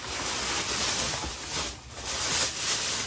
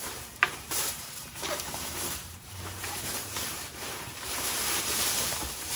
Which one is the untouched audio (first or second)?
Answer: first